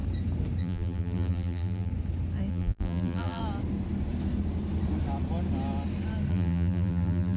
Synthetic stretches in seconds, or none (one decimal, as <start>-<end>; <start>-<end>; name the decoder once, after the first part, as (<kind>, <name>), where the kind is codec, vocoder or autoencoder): 0.6-1.9 (vocoder, BigVGAN v2); 2.5-3.4; 6.3-7.4